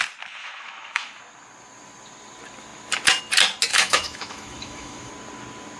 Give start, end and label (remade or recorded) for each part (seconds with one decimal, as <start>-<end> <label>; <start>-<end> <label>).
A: 0.0-0.4 recorded; 0.4-1.2 remade; 1.2-3.7 recorded; 3.7-5.1 remade; 5.1-5.8 recorded